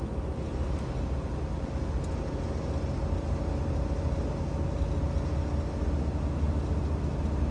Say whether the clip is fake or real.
real